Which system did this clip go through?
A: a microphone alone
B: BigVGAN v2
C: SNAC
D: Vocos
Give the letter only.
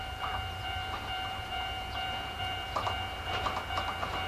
B